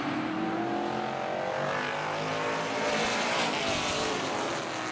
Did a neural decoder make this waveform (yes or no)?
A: no